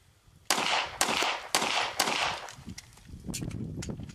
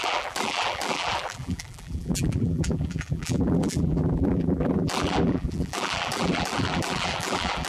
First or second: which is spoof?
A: second